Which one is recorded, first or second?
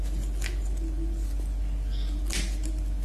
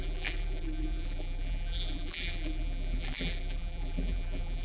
first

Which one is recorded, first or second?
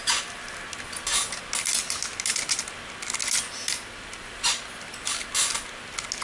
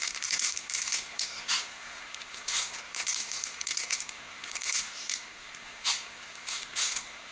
first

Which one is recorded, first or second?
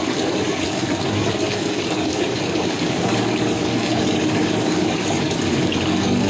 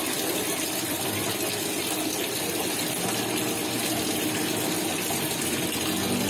second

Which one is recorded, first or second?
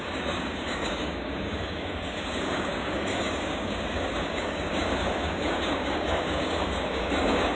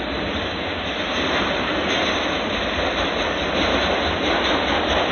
second